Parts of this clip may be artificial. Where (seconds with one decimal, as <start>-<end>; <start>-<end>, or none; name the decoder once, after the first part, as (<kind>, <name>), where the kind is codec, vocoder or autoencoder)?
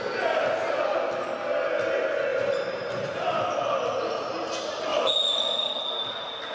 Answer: 2.3-3.3 (vocoder, BigVGAN v2); 4.9-5.7